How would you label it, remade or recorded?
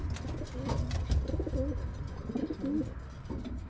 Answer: recorded